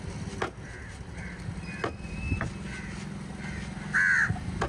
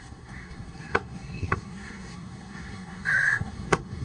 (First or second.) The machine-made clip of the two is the second